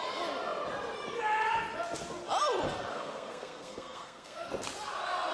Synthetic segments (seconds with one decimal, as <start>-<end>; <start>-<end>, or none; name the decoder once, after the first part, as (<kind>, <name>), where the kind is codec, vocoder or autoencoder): 2.9-4.5 (codec, SNAC)